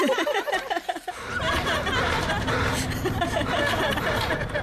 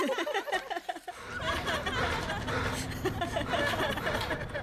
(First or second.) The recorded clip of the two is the second